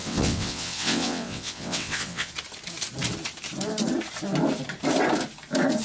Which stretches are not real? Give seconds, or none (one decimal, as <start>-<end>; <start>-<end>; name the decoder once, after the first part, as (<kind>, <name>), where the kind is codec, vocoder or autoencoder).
0.0-2.3 (vocoder, WaveNeXt)